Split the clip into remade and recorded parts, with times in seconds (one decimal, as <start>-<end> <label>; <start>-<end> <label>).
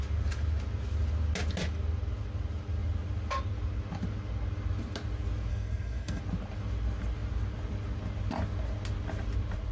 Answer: 0.0-5.5 recorded; 5.5-6.2 remade; 6.2-9.7 recorded